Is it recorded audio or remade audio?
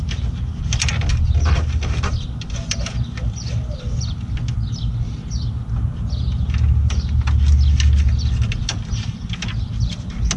recorded